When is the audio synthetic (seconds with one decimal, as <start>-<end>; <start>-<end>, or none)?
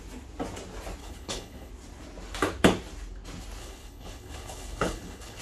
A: 1.0-1.7; 3.6-5.4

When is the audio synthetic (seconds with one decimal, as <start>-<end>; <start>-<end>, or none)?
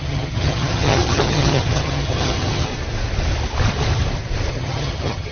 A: 0.0-2.7; 4.5-5.3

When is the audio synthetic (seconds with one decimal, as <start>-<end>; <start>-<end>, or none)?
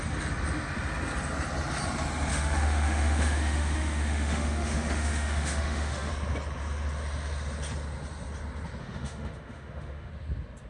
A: 2.3-6.1; 8.8-10.1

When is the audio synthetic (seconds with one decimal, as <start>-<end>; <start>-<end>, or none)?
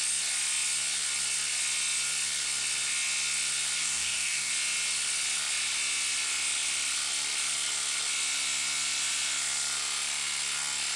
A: 3.8-4.5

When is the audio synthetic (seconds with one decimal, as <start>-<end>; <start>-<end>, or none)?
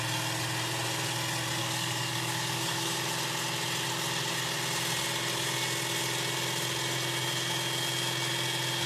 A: 1.6-3.0